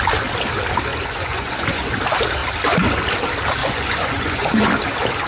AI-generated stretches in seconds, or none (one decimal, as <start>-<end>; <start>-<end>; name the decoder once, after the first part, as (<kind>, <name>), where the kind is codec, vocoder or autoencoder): 0.9-1.9 (vocoder, Vocos); 3.6-4.7